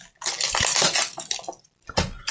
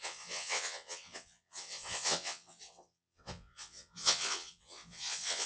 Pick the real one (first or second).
first